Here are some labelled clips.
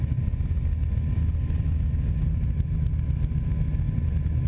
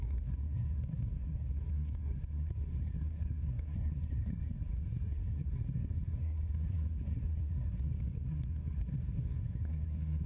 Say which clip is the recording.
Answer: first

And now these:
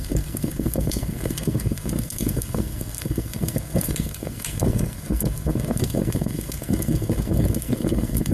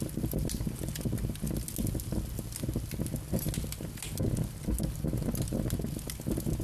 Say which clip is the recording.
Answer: second